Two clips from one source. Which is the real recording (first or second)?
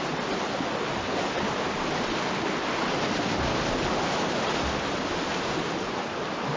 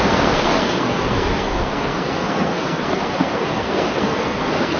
first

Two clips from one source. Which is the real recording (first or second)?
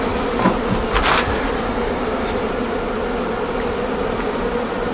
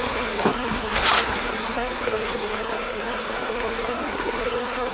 first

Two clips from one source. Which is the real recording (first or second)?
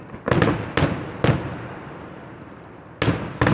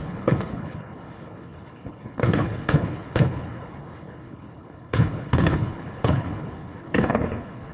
first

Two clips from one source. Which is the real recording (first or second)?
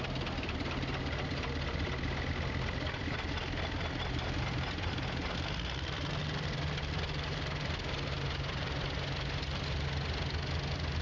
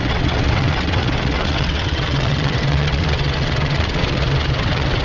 first